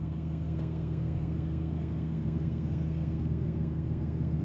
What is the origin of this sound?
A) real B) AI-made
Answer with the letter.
B